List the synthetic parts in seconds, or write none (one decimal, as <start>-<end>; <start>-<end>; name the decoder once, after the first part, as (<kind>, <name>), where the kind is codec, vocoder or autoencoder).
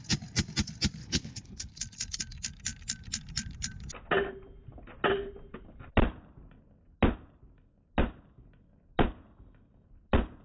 1.0-1.7 (codec, HILCodec)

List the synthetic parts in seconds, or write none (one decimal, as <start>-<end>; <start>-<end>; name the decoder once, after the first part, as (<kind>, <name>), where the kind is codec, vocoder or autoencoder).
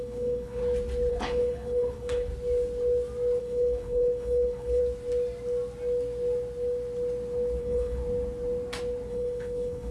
0.0-0.6 (codec, HILCodec); 1.1-2.3; 3.4-4.8; 7.6-8.0; 9.1-9.9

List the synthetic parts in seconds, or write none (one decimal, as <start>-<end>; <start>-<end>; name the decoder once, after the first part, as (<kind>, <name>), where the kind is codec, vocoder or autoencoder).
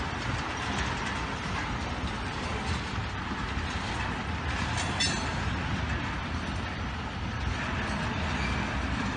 none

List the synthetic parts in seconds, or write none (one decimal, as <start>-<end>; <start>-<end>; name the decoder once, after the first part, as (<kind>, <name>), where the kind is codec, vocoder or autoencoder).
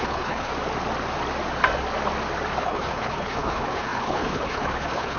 0.0-0.5 (codec, HILCodec); 2.6-5.2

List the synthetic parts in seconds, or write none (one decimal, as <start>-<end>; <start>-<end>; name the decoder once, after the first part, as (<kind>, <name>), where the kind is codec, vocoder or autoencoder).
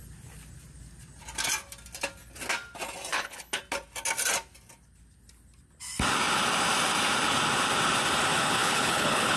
3.1-3.6 (codec, HILCodec); 8.6-9.4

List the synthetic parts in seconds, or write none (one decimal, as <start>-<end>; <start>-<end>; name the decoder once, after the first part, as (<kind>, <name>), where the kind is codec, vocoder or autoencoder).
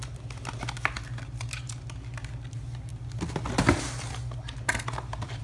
none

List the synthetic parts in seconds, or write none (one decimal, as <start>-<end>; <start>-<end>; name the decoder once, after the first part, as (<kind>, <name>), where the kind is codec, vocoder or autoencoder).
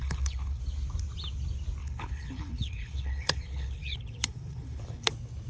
0.0-0.6 (codec, HILCodec); 1.8-5.1